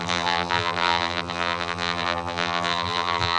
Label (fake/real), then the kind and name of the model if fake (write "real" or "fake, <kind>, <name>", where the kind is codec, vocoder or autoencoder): fake, vocoder, BigVGAN v2